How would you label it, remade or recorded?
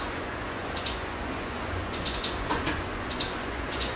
remade